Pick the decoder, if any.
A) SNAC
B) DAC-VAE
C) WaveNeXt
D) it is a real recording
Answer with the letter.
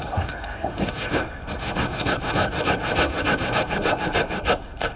A